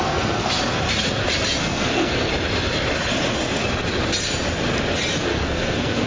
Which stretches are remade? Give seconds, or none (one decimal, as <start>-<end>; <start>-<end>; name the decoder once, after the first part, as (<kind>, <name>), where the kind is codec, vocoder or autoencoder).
0.0-0.5 (codec, SNAC); 1.6-2.3; 5.3-6.1